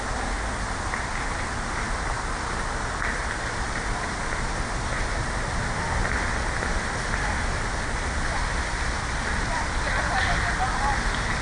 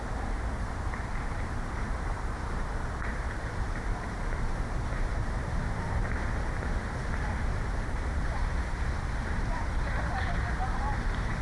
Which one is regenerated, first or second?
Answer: second